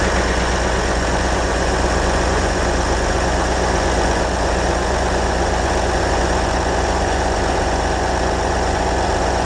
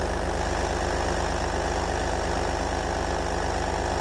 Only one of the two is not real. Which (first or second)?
first